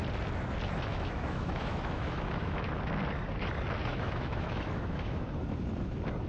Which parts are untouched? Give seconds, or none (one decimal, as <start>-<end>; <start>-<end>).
0.0-0.9; 2.7-3.9; 5.3-6.3

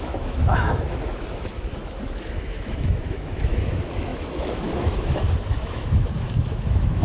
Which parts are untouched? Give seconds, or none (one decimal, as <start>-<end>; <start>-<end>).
none

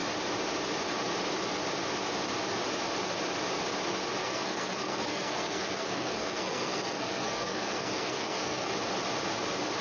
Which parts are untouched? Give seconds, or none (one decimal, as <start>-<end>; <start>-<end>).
0.0-4.2; 8.7-9.8

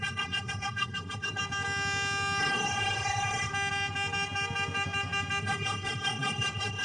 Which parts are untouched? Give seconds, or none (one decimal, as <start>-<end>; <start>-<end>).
1.4-2.4; 3.5-5.4